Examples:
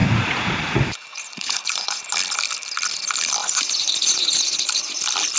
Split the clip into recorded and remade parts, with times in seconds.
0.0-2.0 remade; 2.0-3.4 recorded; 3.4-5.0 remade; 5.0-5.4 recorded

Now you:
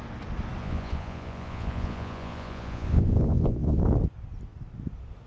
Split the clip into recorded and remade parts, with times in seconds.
0.0-0.6 recorded; 0.6-3.8 remade; 3.8-5.3 recorded

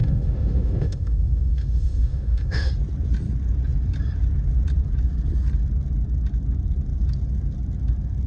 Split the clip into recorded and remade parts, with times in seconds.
0.0-2.7 remade; 2.7-8.3 recorded

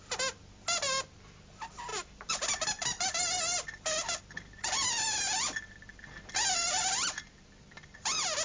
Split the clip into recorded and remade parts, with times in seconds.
0.0-1.9 recorded; 1.9-4.2 remade; 4.2-8.4 recorded

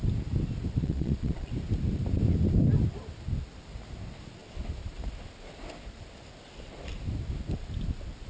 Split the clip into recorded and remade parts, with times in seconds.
0.0-0.8 recorded; 0.8-1.5 remade; 1.5-8.3 recorded